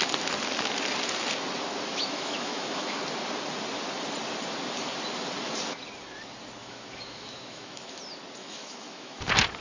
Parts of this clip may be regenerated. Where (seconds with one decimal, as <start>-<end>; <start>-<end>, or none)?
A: 1.9-3.0; 6.6-8.0; 8.4-9.2